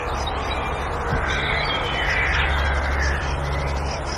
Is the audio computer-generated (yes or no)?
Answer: yes